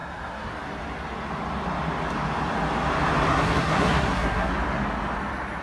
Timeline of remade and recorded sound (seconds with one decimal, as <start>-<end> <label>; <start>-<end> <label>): 0.0-0.5 remade; 0.5-3.3 recorded; 3.3-4.5 remade; 4.5-5.6 recorded